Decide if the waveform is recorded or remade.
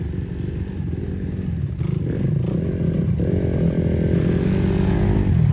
recorded